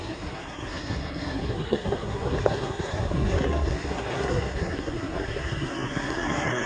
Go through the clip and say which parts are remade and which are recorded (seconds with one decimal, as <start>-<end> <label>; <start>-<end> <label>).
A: 0.0-6.7 remade